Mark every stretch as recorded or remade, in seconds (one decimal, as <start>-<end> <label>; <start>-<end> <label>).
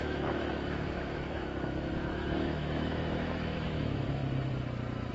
0.0-4.2 remade; 4.2-5.1 recorded